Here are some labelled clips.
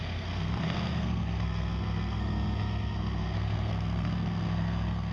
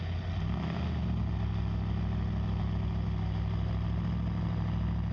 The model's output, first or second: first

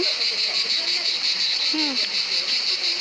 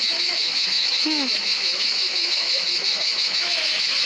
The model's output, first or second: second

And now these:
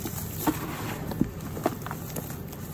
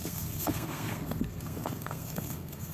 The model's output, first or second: second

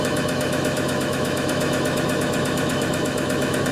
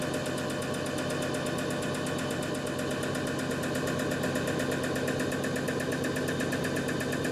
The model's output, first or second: first